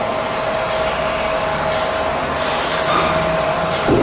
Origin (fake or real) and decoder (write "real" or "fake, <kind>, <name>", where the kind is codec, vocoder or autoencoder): real